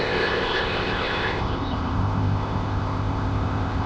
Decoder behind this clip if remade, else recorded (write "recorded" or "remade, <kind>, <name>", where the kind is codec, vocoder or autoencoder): remade, codec, ZipCodec